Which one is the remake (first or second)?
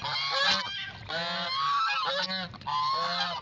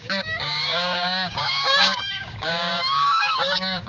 second